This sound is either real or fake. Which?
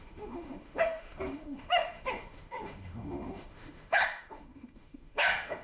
fake